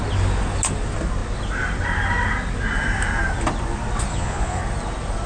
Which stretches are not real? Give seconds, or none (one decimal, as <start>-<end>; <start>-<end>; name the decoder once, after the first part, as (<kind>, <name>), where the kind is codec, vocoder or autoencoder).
4.1-4.6 (vocoder, Vocos)